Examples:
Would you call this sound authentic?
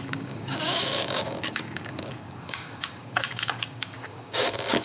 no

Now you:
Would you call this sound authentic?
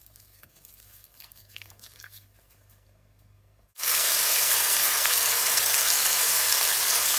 no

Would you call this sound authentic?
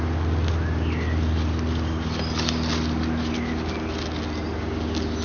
yes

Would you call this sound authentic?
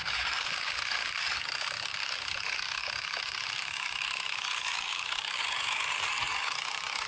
no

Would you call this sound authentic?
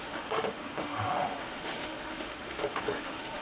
no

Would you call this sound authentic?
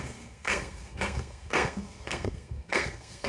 no